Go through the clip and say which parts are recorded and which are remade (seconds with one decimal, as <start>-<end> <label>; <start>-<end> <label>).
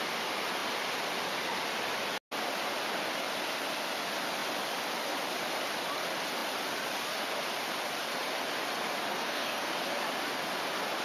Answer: 0.0-9.1 recorded; 9.1-9.7 remade; 9.7-11.0 recorded